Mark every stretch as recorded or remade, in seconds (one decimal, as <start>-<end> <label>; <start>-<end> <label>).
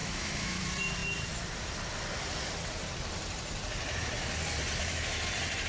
0.0-0.6 remade; 0.6-4.8 recorded; 4.8-5.3 remade; 5.3-5.7 recorded